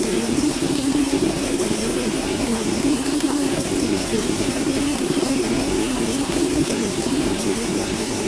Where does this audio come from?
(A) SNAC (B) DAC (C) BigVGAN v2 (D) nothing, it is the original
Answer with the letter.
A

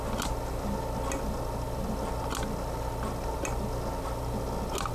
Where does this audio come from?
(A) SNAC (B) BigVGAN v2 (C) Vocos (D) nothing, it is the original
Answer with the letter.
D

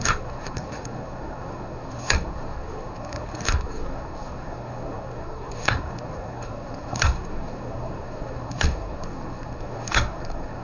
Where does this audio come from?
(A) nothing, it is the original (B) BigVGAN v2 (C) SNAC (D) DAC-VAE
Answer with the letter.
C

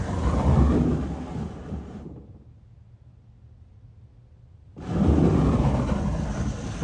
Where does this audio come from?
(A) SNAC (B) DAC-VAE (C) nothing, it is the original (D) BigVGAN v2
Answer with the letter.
C